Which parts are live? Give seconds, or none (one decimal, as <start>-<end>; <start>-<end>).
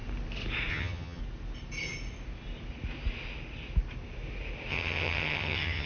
0.0-0.7; 1.2-4.7